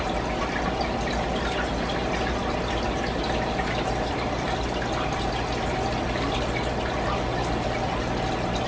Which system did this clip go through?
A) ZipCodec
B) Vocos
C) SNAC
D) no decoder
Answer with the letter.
D